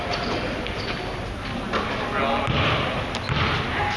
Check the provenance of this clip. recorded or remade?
recorded